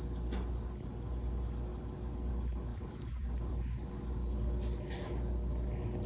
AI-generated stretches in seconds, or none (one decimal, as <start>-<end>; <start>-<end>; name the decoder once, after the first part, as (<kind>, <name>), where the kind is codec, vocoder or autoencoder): 2.7-3.9 (vocoder, BigVGAN v2)